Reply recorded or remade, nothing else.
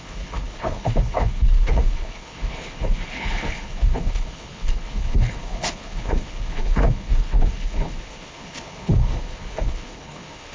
remade